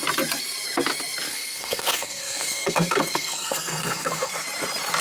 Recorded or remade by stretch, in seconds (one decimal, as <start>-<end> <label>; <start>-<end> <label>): 0.0-1.3 recorded; 1.3-4.3 remade; 4.3-5.0 recorded